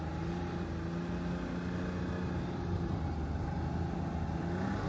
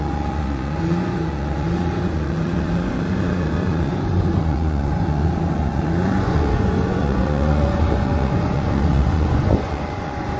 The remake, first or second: second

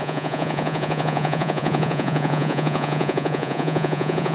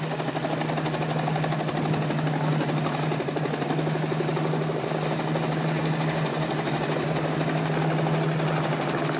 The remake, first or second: first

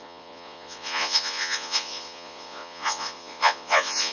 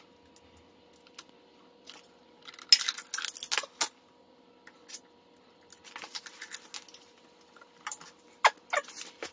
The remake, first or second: first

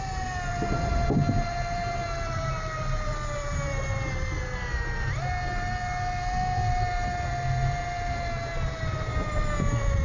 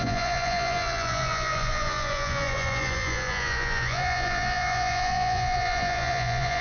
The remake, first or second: second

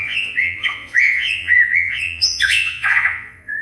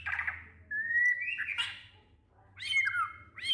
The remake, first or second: first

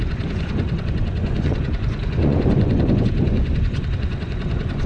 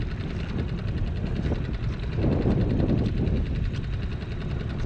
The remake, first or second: first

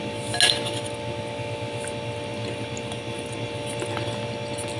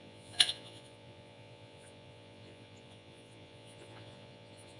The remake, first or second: second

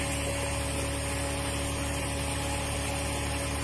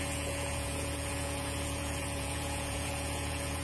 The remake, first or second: second